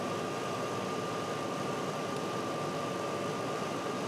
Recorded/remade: recorded